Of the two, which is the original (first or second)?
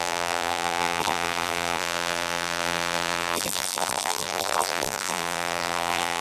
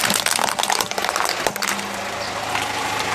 second